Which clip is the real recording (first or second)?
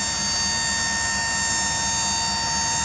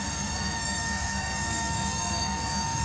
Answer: first